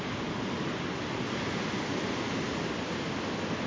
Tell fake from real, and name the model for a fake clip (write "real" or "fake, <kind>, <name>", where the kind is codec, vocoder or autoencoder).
real